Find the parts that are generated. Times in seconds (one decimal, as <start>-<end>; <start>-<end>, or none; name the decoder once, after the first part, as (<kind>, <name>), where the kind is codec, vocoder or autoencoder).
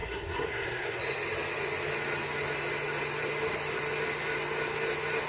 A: 0.0-1.0 (codec, SNAC)